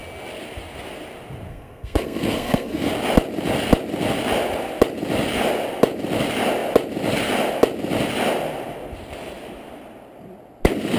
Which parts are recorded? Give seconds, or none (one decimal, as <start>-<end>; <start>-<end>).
0.0-1.5; 2.9-11.0